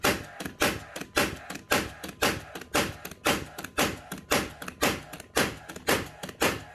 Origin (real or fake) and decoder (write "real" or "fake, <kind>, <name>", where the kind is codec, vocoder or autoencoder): real